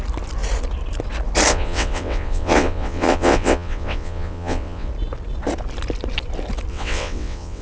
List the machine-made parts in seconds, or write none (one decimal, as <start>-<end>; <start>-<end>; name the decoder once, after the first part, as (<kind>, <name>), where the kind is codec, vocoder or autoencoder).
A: 1.5-4.9 (vocoder, WaveNeXt); 6.7-7.6